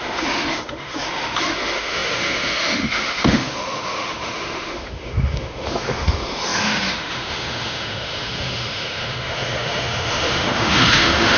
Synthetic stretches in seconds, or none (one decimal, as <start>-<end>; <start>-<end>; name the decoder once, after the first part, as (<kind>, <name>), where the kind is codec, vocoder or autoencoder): 0.0-11.4 (autoencoder, DAC-VAE)